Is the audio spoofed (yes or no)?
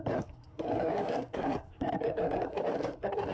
yes